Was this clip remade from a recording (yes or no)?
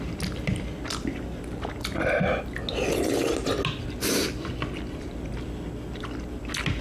no